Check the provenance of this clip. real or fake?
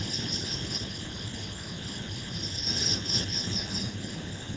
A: fake